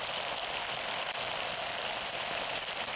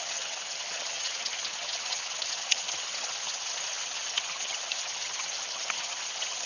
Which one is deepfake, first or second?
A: second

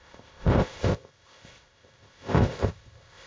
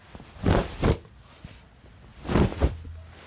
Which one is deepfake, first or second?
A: first